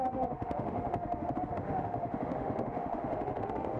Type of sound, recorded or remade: remade